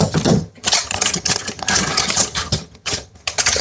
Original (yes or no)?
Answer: no